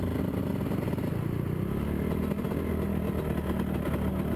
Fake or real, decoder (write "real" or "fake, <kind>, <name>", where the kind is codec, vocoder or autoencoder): real